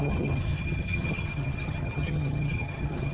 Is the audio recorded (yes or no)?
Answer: no